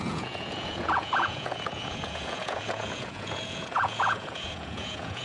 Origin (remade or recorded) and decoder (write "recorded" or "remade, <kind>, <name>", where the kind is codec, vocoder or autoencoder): remade, vocoder, Vocos